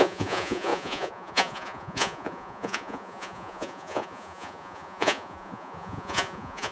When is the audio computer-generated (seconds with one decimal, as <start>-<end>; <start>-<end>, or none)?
0.0-6.7